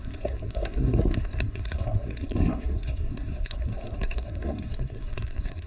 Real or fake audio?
fake